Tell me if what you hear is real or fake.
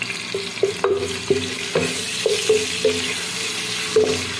real